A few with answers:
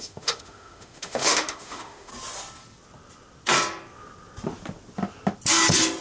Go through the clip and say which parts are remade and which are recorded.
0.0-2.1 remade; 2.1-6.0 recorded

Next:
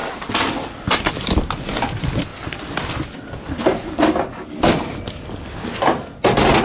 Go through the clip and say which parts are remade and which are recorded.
0.0-6.6 recorded

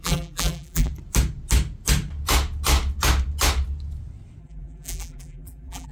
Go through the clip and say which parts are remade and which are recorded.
0.0-0.9 remade; 0.9-4.4 recorded; 4.4-5.9 remade

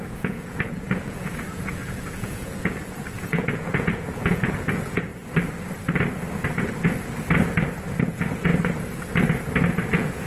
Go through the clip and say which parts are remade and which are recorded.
0.0-5.1 remade; 5.1-8.0 recorded; 8.0-8.5 remade; 8.5-9.9 recorded; 9.9-10.3 remade